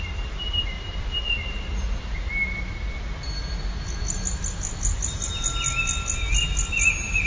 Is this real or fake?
real